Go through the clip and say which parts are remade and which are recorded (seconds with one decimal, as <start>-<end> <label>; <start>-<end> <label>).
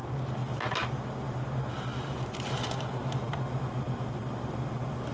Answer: 0.0-5.1 recorded